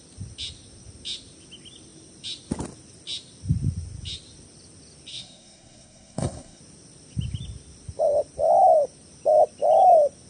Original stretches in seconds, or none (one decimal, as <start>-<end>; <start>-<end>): 0.0-5.1; 6.6-10.3